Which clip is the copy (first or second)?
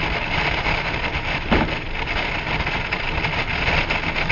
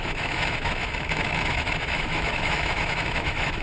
second